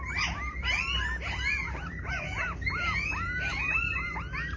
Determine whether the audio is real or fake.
real